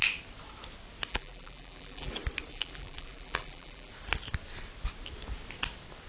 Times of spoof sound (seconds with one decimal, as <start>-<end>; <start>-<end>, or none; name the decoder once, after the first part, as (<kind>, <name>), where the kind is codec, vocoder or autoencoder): 1.1-2.1 (vocoder, BigVGAN v2); 2.5-3.9